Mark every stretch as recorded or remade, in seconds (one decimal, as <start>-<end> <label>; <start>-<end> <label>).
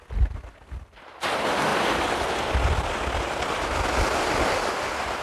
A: 0.0-5.2 recorded